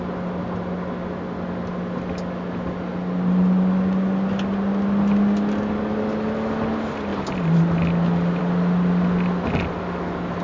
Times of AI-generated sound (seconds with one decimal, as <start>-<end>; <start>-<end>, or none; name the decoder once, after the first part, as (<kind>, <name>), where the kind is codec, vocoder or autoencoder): none

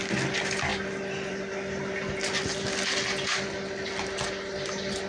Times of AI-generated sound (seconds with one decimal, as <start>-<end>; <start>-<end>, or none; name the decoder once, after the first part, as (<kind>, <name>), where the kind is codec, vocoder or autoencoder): none

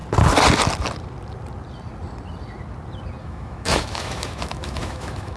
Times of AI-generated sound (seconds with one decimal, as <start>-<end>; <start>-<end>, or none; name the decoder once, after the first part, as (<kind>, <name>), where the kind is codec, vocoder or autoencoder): 3.2-5.4 (autoencoder, DAC-VAE)

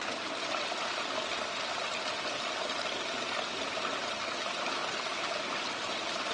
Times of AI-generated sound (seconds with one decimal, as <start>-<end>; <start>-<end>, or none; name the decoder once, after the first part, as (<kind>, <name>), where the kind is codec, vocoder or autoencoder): none

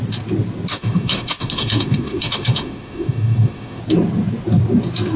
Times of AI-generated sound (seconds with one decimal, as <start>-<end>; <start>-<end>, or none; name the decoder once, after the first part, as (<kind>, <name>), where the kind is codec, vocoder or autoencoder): 0.7-3.8 (autoencoder, DAC-VAE)